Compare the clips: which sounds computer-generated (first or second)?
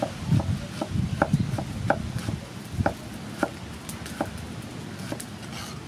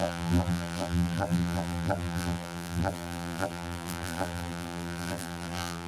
second